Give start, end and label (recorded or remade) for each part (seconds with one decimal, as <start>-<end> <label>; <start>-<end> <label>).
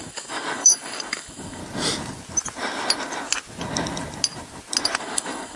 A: 0.0-1.6 remade; 1.6-5.0 recorded; 5.0-5.6 remade